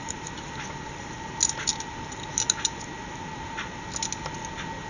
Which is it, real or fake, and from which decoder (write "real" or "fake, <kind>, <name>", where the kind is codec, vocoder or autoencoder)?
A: real